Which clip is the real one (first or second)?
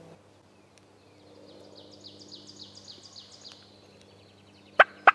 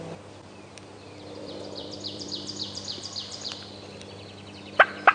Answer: first